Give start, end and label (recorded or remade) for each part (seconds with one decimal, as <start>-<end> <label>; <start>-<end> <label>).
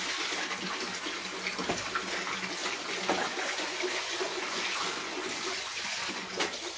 0.0-2.6 recorded; 2.6-6.8 remade